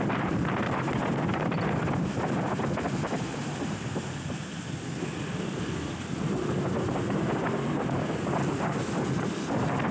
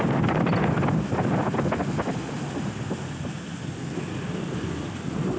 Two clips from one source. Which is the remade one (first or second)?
first